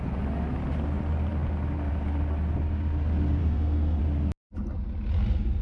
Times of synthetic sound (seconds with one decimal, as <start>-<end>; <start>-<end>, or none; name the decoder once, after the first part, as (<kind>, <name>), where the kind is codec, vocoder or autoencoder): 3.4-4.0 (codec, SNAC)

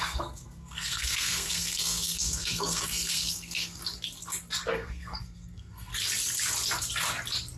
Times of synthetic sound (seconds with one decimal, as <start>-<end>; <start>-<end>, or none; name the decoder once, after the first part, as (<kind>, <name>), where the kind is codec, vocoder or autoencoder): 0.0-3.8 (codec, SNAC); 4.7-5.9

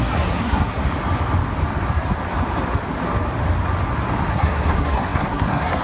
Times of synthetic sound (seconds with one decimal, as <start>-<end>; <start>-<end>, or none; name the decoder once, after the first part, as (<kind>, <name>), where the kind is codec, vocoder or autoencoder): 0.0-0.8 (codec, SNAC); 4.3-5.8

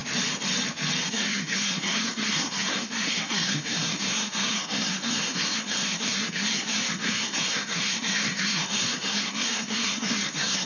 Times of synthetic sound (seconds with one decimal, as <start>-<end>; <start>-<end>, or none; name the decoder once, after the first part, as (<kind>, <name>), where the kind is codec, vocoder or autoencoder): 1.1-10.7 (codec, SNAC)

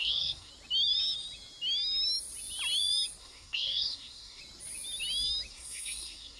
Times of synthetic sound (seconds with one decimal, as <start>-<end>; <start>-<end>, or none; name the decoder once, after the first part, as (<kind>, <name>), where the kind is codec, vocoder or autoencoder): 0.0-0.5 (codec, SNAC); 3.2-4.4; 5.5-6.4